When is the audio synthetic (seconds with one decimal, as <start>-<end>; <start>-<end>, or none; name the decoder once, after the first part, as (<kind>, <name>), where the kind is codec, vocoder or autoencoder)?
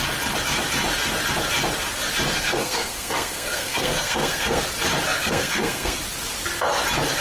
2.3-4.6 (codec, SNAC); 5.2-6.0